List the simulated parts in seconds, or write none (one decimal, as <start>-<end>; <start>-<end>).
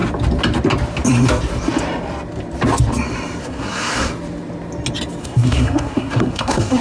3.4-4.1; 5.2-6.8